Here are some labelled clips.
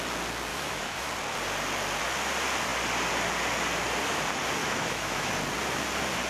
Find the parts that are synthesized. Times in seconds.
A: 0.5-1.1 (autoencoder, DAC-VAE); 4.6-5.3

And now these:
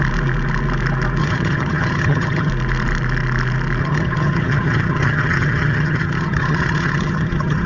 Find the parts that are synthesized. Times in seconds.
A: 1.2-2.5 (vocoder, HiFi-GAN); 3.8-7.7

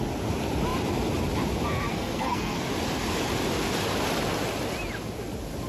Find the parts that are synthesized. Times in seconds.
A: 1.9-2.6 (codec, SNAC)

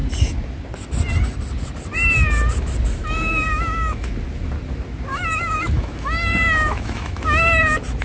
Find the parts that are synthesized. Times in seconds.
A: 3.0-4.1 (autoencoder, DAC-VAE); 5.1-7.6

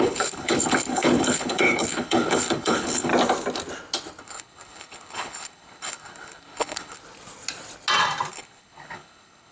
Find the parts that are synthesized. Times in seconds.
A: 0.0-3.1 (codec, HILCodec); 4.2-7.0; 8.3-9.5

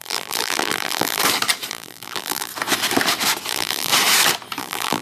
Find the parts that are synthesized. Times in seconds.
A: 0.0-1.2 (vocoder, BigVGAN v2); 1.7-2.5; 3.5-3.9; 4.6-5.0